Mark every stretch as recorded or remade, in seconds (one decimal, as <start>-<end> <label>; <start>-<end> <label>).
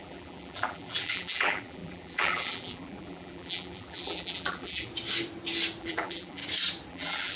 0.0-4.9 remade; 4.9-5.8 recorded; 5.8-6.4 remade; 6.4-6.9 recorded; 6.9-7.4 remade